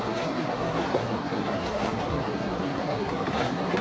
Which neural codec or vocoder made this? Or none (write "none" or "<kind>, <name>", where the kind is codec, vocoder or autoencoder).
codec, SNAC